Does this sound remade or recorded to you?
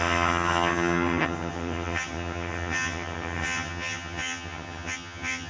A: remade